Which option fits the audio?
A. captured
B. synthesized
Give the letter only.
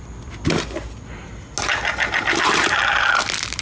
A